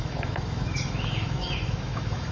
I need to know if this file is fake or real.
fake